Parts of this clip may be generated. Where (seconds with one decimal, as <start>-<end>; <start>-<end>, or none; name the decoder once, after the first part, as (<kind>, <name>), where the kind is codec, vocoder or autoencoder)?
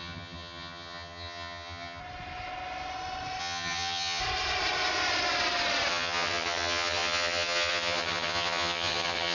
0.0-2.0 (vocoder, HiFi-GAN); 3.4-4.2; 5.9-9.3